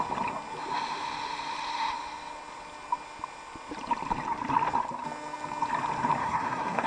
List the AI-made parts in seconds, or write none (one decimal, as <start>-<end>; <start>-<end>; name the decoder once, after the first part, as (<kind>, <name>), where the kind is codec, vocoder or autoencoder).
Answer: 6.2-6.9 (codec, SNAC)